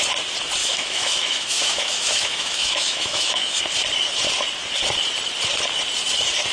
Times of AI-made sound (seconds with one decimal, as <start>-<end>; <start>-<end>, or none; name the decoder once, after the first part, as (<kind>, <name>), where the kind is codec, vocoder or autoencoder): 0.6-3.6 (autoencoder, DAC-VAE)